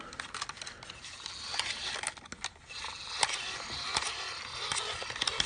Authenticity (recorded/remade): recorded